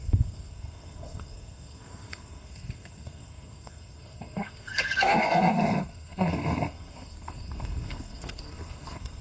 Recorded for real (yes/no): no